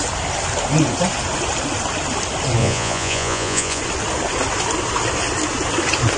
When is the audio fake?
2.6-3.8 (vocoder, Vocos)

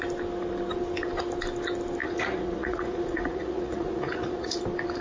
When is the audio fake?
2.0-4.6 (vocoder, Vocos)

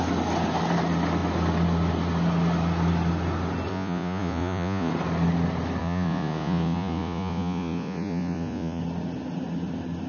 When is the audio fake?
3.7-4.9 (vocoder, Vocos); 5.8-8.8

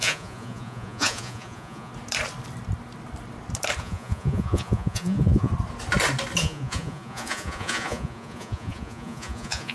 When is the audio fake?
0.0-1.9 (vocoder, Vocos); 3.8-5.5; 6.4-9.7

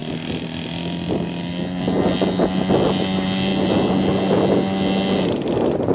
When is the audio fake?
none